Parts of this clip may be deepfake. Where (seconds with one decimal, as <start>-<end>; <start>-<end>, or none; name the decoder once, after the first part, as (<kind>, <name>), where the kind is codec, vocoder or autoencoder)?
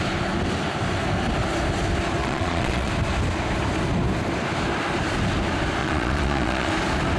2.2-2.9 (vocoder, Vocos); 5.8-6.7